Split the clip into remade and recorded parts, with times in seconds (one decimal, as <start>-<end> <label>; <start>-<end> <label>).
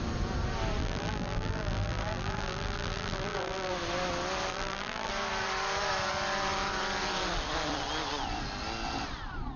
0.0-0.8 recorded; 0.8-3.7 remade; 3.7-4.5 recorded; 4.5-5.1 remade; 5.1-9.6 recorded